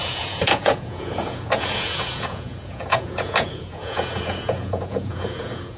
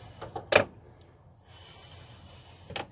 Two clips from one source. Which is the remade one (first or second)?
first